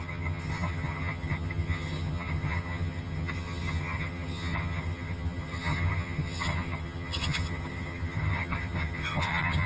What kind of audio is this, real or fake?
fake